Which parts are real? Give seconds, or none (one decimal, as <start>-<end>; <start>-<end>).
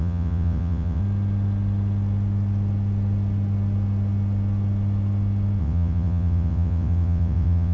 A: 1.0-5.6